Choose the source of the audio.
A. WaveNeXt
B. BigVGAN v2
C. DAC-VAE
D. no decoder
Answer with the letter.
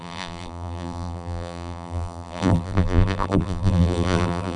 B